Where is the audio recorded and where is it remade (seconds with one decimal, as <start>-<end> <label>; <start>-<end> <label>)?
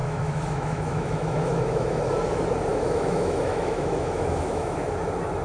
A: 0.0-2.0 remade; 2.0-2.7 recorded; 2.7-4.9 remade; 4.9-5.4 recorded